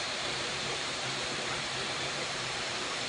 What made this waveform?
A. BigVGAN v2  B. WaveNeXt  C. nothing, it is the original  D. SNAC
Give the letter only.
A